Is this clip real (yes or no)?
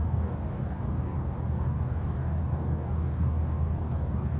no